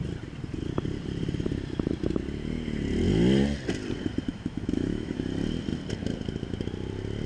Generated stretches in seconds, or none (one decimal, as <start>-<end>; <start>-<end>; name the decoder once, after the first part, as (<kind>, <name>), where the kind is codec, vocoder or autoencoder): 4.3-5.1 (autoencoder, DAC-VAE)